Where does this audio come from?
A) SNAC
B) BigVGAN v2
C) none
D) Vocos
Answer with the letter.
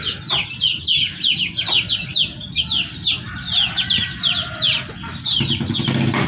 C